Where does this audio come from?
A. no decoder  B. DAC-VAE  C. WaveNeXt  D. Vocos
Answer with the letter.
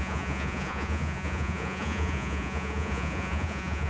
D